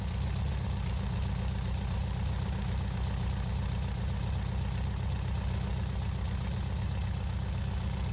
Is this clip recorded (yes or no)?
yes